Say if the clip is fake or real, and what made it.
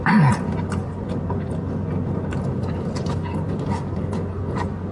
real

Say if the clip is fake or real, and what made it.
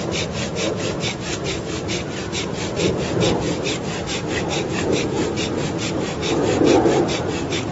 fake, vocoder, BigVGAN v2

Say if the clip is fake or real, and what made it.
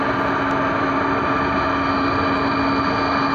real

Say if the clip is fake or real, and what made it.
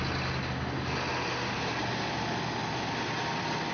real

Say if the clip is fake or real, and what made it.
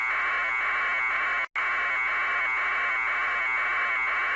real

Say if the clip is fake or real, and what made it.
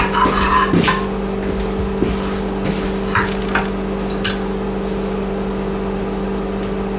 real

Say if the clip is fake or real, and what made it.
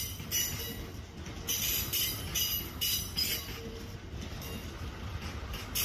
real